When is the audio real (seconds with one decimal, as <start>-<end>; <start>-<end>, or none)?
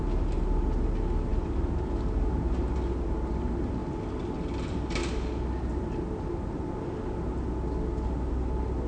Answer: 0.0-8.9